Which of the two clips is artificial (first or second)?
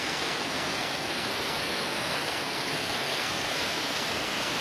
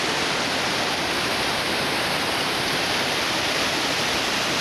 first